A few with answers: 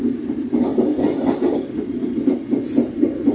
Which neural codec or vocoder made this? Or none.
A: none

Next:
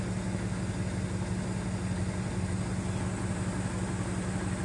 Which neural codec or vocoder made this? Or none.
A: none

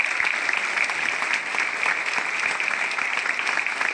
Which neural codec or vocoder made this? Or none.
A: none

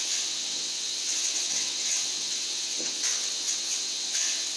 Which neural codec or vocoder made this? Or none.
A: vocoder, WaveNeXt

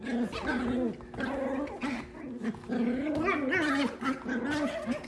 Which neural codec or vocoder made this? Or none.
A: none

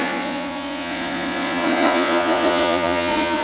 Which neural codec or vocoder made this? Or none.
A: vocoder, Vocos